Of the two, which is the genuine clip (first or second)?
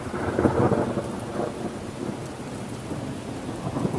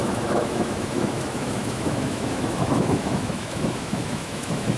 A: first